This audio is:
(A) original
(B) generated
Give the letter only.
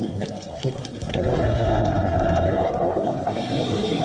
B